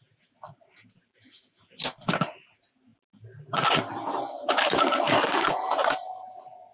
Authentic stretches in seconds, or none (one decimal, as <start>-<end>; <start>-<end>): 0.0-6.7